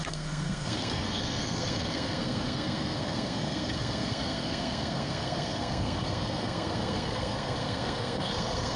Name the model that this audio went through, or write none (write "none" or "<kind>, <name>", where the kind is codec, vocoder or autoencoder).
codec, SNAC